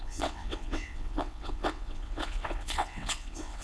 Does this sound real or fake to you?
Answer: fake